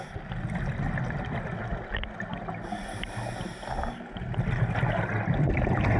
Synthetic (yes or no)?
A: no